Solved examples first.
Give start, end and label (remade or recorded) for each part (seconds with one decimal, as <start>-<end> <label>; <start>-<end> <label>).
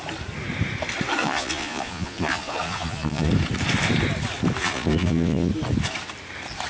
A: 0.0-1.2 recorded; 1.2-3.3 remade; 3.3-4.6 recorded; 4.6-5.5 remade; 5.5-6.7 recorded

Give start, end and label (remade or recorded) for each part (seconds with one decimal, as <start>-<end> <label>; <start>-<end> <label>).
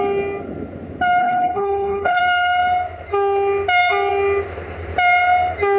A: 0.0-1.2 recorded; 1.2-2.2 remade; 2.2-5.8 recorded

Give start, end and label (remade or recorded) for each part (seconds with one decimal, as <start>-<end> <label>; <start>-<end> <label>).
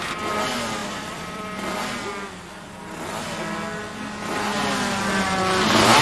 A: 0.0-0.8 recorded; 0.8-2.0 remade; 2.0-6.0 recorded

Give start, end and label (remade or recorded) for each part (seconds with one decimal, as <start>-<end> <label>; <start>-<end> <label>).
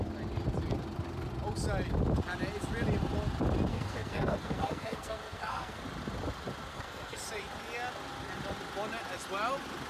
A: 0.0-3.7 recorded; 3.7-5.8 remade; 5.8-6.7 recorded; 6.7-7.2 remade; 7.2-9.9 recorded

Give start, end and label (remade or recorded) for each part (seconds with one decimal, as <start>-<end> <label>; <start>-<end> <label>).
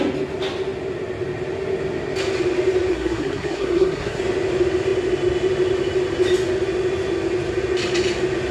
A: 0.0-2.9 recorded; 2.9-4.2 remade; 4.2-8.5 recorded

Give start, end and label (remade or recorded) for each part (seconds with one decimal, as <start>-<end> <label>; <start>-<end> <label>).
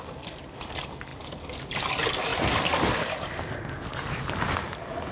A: 0.0-5.1 recorded